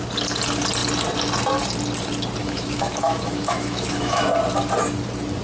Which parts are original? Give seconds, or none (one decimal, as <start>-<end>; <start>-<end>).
0.0-2.4; 4.3-5.4